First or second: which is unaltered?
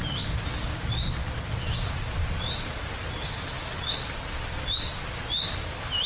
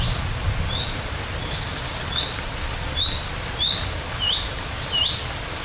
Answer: first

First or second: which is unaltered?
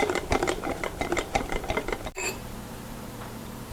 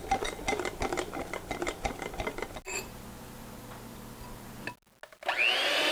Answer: second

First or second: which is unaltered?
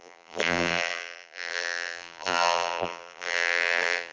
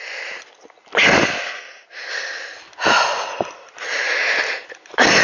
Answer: second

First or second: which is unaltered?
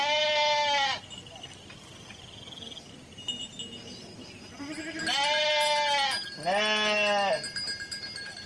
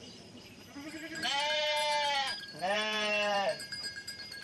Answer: first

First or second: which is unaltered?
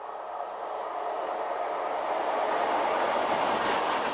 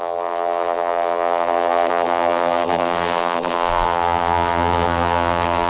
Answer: first